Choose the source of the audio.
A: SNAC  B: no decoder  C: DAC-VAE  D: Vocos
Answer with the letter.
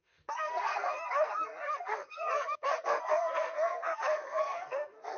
A